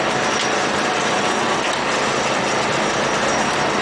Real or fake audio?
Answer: real